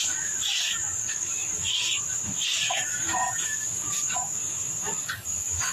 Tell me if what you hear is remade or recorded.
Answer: remade